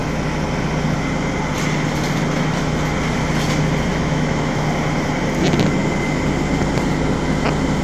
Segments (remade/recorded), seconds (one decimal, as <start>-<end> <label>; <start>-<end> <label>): 0.0-3.9 recorded; 3.9-4.7 remade; 4.7-7.8 recorded